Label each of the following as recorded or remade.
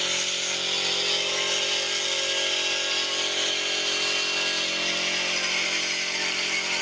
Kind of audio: recorded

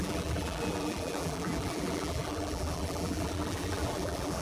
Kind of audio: remade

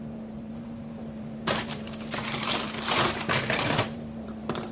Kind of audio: remade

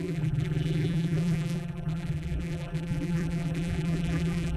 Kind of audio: remade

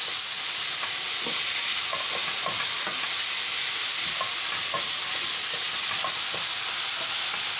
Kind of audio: recorded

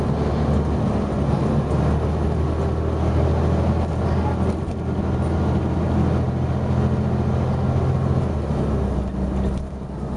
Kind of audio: recorded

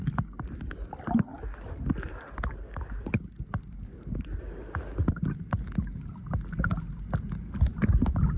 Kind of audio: recorded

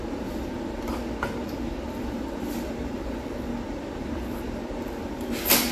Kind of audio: remade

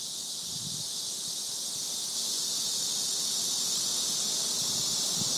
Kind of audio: recorded